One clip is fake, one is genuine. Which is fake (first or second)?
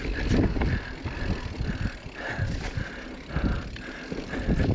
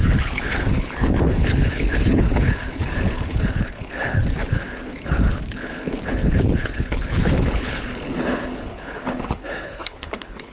second